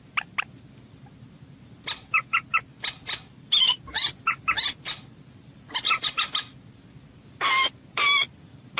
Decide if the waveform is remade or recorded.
recorded